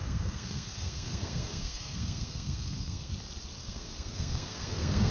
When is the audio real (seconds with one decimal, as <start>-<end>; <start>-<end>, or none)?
3.1-3.6